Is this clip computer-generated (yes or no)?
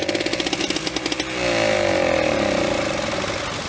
no